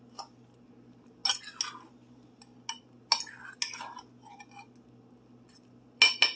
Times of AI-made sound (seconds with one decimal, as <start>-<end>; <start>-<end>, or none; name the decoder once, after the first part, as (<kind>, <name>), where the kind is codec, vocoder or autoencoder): none